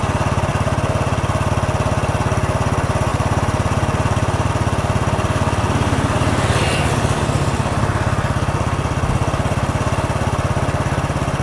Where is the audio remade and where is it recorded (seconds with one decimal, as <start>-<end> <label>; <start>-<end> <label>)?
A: 0.0-3.1 recorded; 3.1-4.5 remade; 4.5-11.4 recorded